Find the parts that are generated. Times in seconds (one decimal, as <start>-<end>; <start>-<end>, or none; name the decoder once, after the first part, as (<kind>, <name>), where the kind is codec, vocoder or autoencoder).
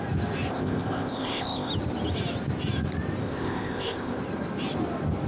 0.5-1.7 (codec, ZipCodec); 3.2-4.2